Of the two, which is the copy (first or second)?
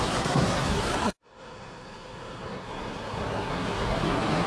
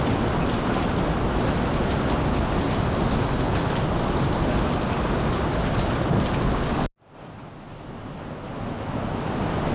first